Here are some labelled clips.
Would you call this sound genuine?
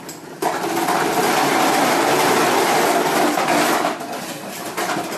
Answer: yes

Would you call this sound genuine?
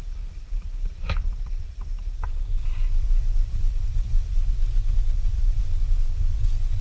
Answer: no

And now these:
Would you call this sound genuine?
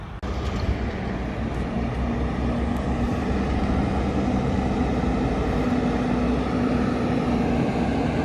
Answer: yes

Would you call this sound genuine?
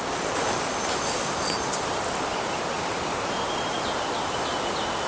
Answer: yes